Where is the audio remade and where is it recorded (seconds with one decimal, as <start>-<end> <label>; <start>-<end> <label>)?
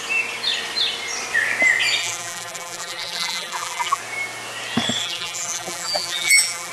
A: 0.0-2.0 recorded; 2.0-4.0 remade; 4.0-5.0 recorded; 5.0-6.7 remade